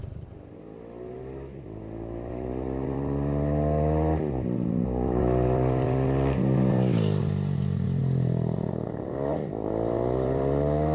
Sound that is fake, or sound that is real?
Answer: fake